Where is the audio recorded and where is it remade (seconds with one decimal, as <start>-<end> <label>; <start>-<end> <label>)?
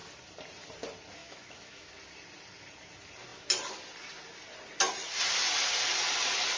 0.0-1.2 recorded; 1.2-1.9 remade; 1.9-6.6 recorded